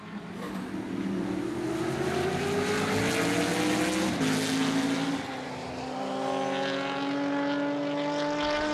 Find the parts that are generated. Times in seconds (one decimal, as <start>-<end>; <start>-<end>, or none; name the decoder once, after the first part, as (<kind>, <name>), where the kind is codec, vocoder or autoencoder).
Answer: none